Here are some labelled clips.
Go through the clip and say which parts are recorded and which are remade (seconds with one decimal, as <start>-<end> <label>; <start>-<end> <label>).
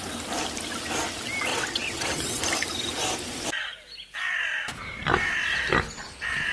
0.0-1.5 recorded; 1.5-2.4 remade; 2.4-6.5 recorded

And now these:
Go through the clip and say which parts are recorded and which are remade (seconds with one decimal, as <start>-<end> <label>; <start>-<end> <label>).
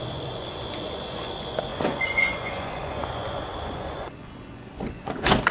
0.0-5.5 remade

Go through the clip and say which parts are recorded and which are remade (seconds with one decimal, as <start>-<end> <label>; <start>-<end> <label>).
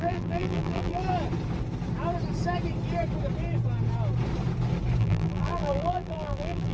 0.0-1.0 remade; 1.0-5.0 recorded; 5.0-6.7 remade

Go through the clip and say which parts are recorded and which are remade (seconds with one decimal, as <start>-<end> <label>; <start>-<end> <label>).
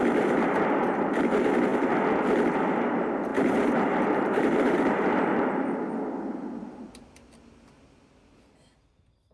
0.0-3.3 recorded; 3.3-5.5 remade; 5.5-9.3 recorded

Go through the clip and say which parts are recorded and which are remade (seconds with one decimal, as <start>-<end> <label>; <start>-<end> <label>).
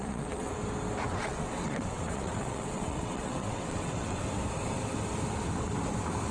0.0-0.5 remade; 0.5-1.1 recorded; 1.1-4.2 remade; 4.2-6.3 recorded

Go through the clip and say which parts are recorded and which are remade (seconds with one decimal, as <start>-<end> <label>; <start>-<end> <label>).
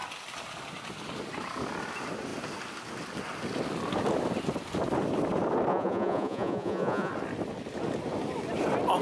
0.0-5.7 recorded; 5.7-7.1 remade; 7.1-9.0 recorded